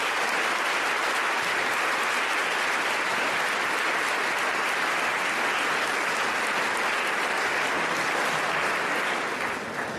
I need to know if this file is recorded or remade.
recorded